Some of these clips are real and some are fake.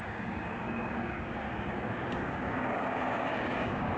fake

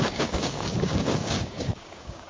fake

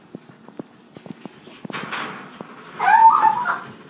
real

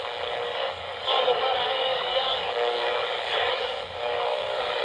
fake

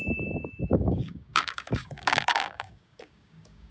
fake